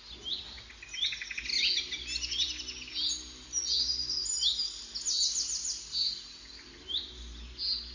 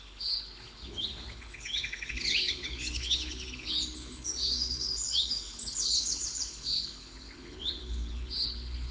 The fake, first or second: second